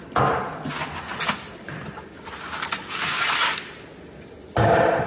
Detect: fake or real real